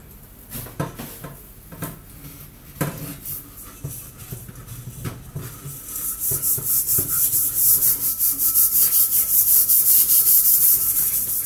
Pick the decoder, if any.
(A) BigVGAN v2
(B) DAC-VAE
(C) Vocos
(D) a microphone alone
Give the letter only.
D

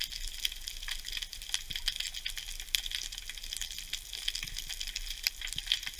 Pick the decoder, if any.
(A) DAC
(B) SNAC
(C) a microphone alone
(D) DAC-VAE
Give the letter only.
C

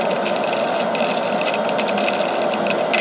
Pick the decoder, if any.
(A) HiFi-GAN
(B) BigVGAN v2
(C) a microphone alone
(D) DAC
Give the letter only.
B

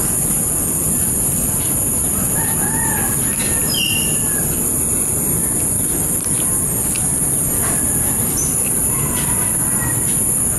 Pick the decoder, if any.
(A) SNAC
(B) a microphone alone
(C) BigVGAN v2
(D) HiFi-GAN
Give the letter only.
C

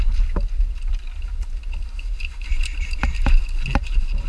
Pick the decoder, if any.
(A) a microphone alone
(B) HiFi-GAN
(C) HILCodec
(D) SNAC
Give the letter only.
A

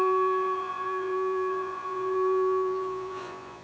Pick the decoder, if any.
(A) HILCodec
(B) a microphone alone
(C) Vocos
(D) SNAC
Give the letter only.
C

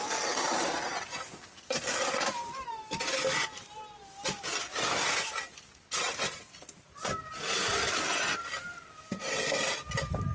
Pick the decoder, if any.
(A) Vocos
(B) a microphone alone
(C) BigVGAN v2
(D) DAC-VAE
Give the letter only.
B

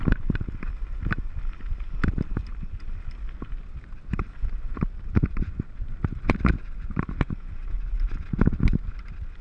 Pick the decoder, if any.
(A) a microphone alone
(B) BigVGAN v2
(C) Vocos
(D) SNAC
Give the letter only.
A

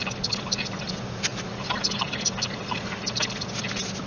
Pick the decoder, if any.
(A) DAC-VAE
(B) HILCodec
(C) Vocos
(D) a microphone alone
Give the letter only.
D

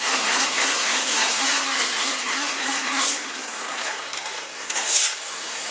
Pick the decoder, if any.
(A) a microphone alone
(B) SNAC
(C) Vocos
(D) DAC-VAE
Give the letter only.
B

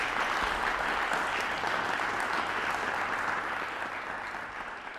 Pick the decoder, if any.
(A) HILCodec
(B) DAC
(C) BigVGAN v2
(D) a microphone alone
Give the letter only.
D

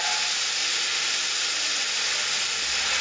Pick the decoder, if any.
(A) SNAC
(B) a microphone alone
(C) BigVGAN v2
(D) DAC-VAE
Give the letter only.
B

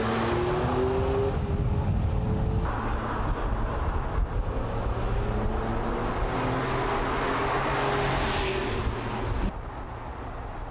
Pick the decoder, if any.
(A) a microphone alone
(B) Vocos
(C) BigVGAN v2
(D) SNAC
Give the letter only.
A